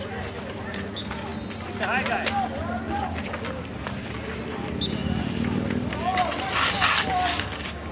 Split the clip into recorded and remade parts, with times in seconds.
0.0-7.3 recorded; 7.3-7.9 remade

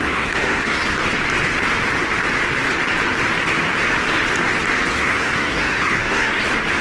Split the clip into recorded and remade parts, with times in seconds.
0.0-0.8 remade; 0.8-4.9 recorded; 4.9-6.3 remade; 6.3-6.8 recorded

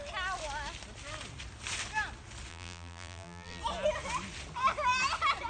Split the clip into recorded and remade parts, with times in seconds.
0.0-2.5 recorded; 2.5-3.6 remade; 3.6-5.5 recorded

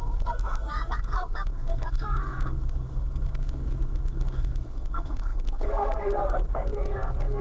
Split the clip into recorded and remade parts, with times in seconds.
0.0-7.4 remade

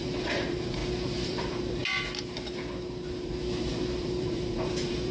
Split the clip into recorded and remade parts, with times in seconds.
0.0-1.8 remade; 1.8-3.7 recorded; 3.7-5.1 remade

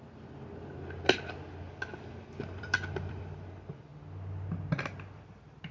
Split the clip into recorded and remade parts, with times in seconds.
0.0-1.9 recorded; 1.9-3.5 remade; 3.5-5.7 recorded